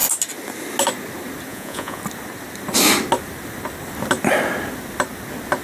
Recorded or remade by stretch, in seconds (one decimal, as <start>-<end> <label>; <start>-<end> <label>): 0.0-1.5 recorded; 1.5-2.0 remade; 2.0-5.6 recorded

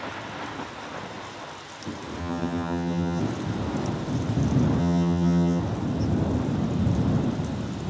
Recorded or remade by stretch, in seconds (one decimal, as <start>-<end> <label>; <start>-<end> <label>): 0.0-2.2 recorded; 2.2-3.2 remade; 3.2-4.8 recorded; 4.8-5.6 remade; 5.6-7.9 recorded

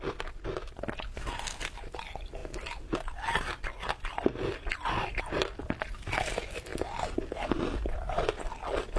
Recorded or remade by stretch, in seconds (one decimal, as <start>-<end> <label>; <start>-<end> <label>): 0.0-9.0 recorded

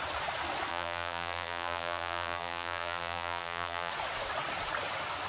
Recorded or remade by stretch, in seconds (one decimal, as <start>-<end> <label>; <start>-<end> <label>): 0.0-0.7 recorded; 0.7-3.9 remade; 3.9-5.3 recorded

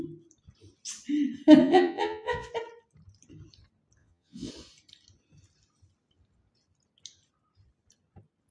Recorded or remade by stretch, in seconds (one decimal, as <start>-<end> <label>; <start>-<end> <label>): 0.0-1.6 recorded; 1.6-2.5 remade; 2.5-4.0 recorded; 4.0-4.5 remade; 4.5-8.5 recorded

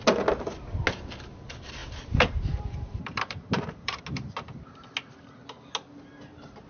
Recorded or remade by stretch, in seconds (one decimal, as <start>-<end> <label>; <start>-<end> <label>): 0.0-1.8 recorded; 1.8-4.0 remade; 4.0-6.1 recorded; 6.1-6.7 remade

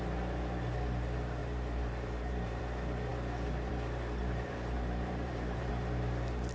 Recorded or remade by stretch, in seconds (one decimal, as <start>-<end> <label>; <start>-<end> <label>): 0.0-1.4 recorded; 1.4-2.6 remade; 2.6-4.2 recorded; 4.2-5.7 remade; 5.7-6.5 recorded

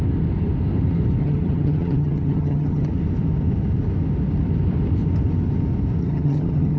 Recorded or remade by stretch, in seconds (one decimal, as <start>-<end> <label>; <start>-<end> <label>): 0.0-1.2 recorded; 1.2-2.9 remade; 2.9-6.0 recorded; 6.0-6.8 remade